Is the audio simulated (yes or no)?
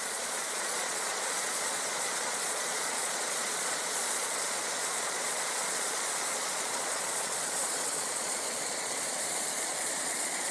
yes